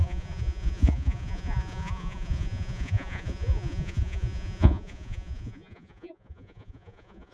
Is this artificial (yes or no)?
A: yes